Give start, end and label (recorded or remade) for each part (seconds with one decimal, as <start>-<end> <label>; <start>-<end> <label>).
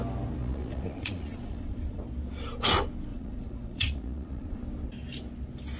0.0-0.4 recorded; 0.4-2.0 remade; 2.0-3.1 recorded; 3.1-4.6 remade; 4.6-5.8 recorded